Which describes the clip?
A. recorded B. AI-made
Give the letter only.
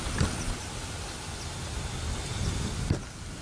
A